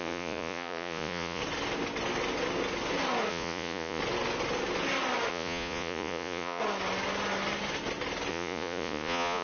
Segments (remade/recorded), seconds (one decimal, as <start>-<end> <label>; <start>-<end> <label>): 0.0-1.4 remade; 1.4-3.3 recorded; 3.3-4.0 remade; 4.0-5.3 recorded; 5.3-6.6 remade; 6.6-8.3 recorded; 8.3-9.4 remade